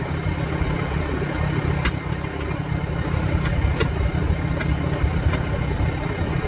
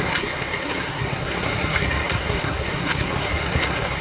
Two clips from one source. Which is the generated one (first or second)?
second